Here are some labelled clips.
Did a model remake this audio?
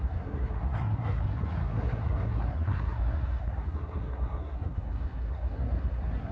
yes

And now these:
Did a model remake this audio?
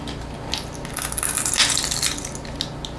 no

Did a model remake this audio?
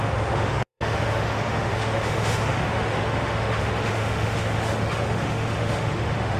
yes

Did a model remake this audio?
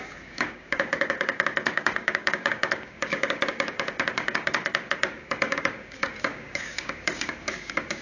yes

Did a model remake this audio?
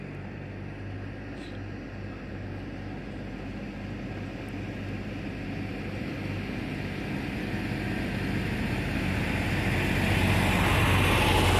no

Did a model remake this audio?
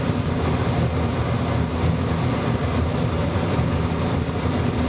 no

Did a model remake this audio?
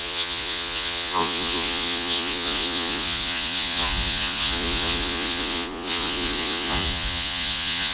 yes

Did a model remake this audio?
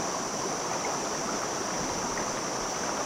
no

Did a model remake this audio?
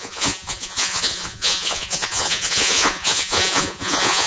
yes